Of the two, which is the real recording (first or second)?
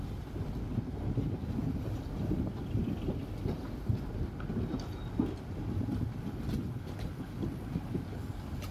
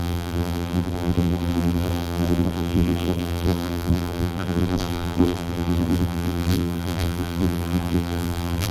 first